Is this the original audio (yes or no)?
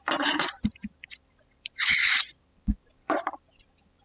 no